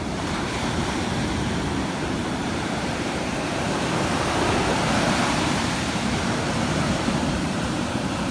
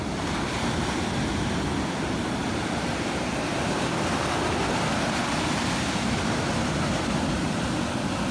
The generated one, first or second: first